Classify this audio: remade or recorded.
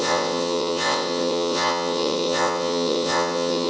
remade